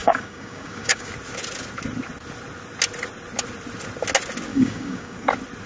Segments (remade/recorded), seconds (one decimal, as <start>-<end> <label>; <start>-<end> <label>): 0.0-1.1 remade; 1.1-4.5 recorded; 4.5-5.3 remade; 5.3-5.7 recorded